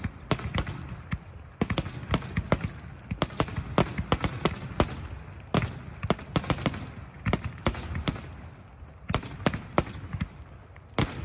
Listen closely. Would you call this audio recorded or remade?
recorded